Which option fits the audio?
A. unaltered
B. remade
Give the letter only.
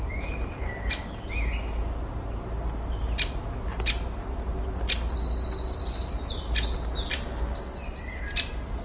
A